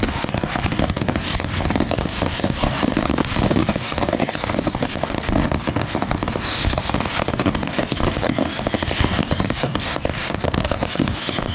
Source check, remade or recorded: remade